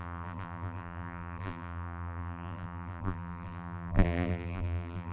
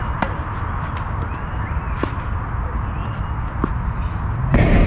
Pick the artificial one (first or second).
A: first